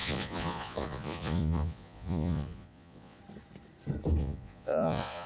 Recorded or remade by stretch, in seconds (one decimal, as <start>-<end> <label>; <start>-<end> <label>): 0.0-3.2 remade; 3.2-4.2 recorded; 4.2-5.3 remade